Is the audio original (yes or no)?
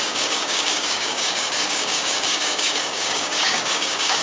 no